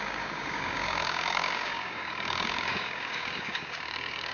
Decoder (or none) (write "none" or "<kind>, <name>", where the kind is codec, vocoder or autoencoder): codec, DAC